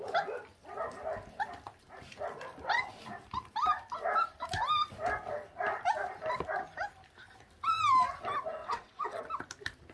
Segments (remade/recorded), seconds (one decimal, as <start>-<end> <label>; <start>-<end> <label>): 0.0-8.6 recorded; 8.6-9.2 remade; 9.2-9.9 recorded